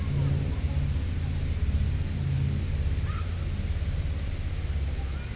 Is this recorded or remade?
recorded